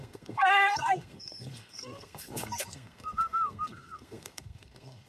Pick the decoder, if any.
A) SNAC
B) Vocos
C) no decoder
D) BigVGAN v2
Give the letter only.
A